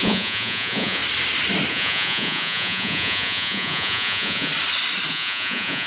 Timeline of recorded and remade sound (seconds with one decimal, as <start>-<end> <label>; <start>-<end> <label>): 0.0-1.0 remade; 1.0-1.7 recorded; 1.7-4.5 remade; 4.5-5.1 recorded; 5.1-5.9 remade